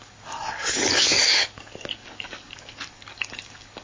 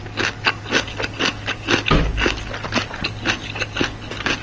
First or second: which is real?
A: second